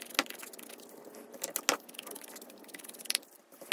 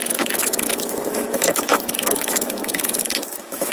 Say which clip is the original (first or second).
first